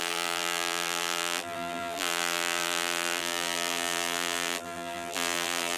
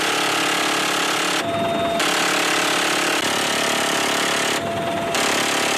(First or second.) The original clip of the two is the second